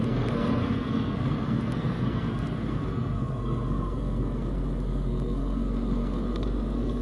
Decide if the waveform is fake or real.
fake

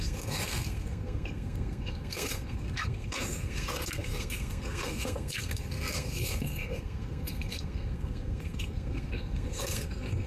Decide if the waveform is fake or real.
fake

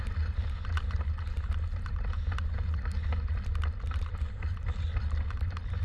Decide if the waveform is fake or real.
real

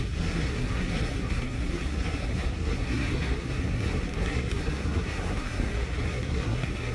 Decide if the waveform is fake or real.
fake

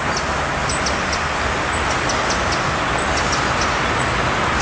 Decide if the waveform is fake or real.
real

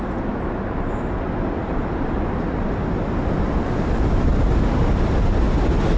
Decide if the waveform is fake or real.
real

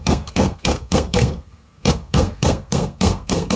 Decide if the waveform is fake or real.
fake